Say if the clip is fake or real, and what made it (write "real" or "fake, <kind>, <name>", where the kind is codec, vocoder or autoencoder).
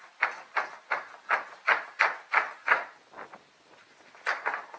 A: real